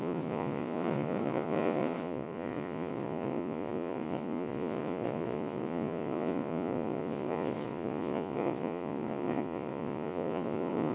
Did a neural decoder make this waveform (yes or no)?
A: yes